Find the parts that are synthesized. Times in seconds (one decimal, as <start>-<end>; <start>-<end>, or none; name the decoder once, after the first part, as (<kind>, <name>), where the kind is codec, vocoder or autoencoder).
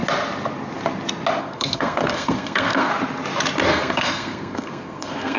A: 1.4-2.9 (codec, SNAC); 3.7-5.4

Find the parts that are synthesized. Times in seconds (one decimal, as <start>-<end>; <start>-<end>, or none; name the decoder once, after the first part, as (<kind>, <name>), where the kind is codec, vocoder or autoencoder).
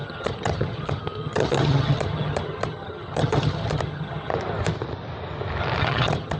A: 0.0-4.3 (vocoder, HiFi-GAN); 5.8-6.4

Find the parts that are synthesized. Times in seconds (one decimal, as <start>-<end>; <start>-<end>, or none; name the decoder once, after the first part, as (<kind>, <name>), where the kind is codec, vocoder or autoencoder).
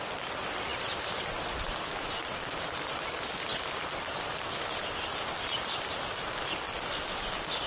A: none